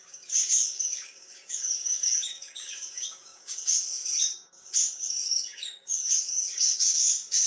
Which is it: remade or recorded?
remade